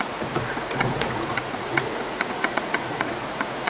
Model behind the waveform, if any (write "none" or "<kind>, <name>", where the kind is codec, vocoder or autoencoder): vocoder, Vocos